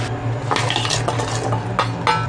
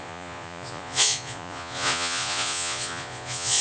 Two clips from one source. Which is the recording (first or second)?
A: first